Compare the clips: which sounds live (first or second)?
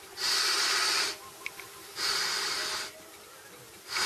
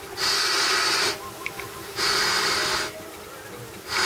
second